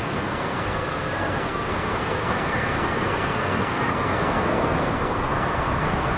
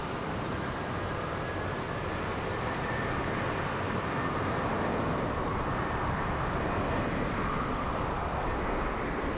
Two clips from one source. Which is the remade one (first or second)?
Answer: first